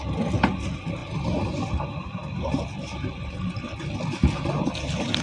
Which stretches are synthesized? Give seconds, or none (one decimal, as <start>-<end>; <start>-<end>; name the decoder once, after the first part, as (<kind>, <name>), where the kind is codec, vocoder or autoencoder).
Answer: none